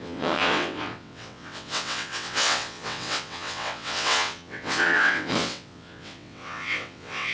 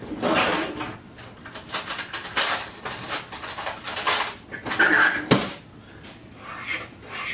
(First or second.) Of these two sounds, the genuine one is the second